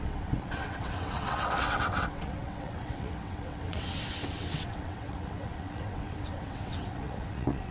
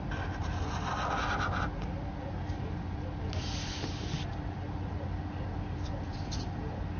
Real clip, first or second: second